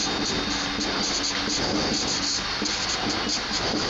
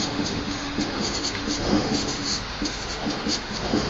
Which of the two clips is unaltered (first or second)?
first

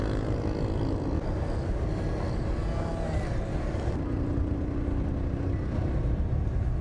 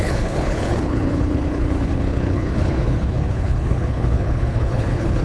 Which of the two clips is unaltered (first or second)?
first